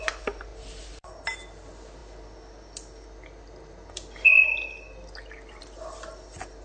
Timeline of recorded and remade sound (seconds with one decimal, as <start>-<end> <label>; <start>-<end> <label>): 0.0-6.6 recorded